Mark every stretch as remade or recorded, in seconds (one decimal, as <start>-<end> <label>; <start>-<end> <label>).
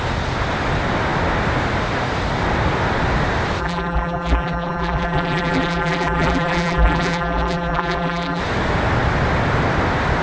0.0-3.6 recorded; 3.6-8.4 remade; 8.4-10.2 recorded